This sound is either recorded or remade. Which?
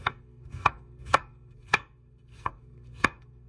remade